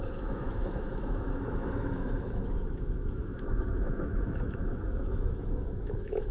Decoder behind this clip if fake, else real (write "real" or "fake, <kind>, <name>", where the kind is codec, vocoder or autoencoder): fake, autoencoder, DAC-VAE